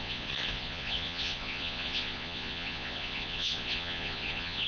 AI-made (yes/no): yes